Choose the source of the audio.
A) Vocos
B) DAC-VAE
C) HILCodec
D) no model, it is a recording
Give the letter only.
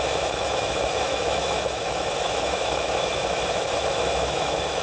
B